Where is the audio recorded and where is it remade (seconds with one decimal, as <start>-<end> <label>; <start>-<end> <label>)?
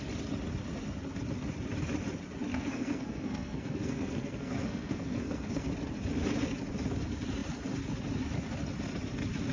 0.0-2.5 recorded; 2.5-5.7 remade; 5.7-9.5 recorded